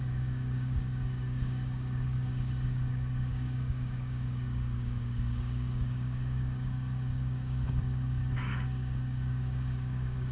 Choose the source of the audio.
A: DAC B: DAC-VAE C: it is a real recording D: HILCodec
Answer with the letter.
A